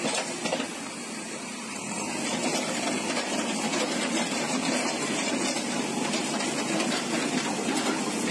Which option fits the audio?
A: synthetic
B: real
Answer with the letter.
B